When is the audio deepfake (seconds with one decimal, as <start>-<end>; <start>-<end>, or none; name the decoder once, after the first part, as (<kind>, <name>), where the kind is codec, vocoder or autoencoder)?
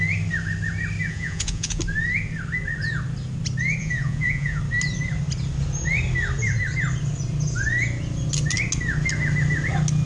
1.1-1.8 (vocoder, Vocos); 3.8-4.6